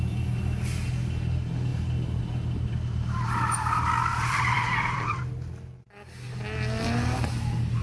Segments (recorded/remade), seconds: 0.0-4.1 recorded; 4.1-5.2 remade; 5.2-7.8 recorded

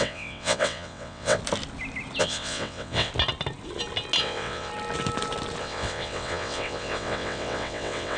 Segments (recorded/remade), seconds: 0.0-1.4 remade; 1.4-2.2 recorded; 2.2-3.1 remade; 3.1-4.2 recorded; 4.2-4.7 remade; 4.7-5.6 recorded; 5.6-8.2 remade

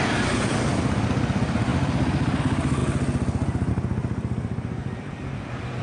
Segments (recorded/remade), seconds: 0.0-4.8 recorded; 4.8-5.8 remade

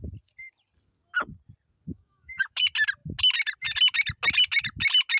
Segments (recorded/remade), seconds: 0.0-1.9 recorded; 1.9-2.6 remade; 2.6-5.2 recorded

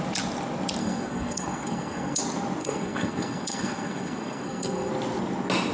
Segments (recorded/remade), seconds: 0.0-0.8 recorded; 0.8-2.2 remade; 2.2-2.6 recorded; 2.6-4.9 remade; 4.9-5.7 recorded

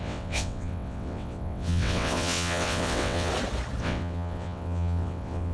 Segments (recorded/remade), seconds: 0.0-3.3 remade; 3.3-3.8 recorded; 3.8-5.5 remade